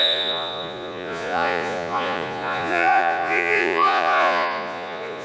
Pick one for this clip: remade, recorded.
remade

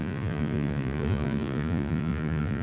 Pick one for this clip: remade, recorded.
remade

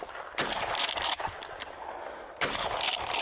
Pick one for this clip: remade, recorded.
recorded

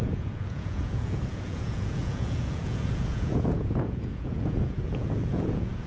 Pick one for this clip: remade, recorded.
remade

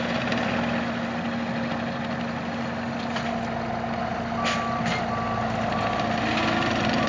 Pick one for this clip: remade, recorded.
recorded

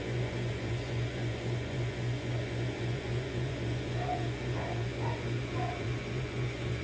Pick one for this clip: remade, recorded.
remade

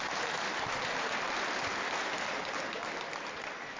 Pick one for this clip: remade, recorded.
recorded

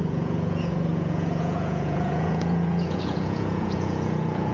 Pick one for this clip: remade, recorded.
remade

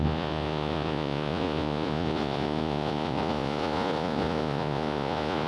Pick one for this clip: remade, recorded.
remade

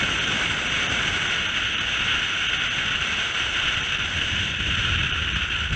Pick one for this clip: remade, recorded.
recorded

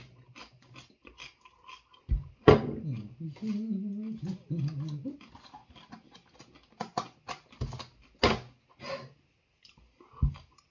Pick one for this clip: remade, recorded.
recorded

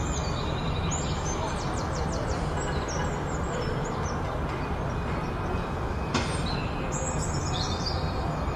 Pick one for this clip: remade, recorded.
recorded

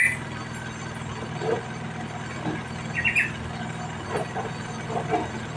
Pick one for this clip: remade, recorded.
recorded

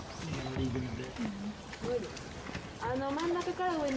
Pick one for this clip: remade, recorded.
recorded